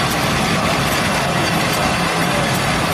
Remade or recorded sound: recorded